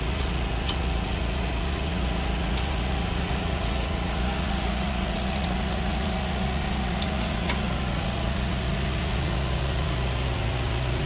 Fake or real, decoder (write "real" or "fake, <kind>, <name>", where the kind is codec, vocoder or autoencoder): fake, vocoder, Vocos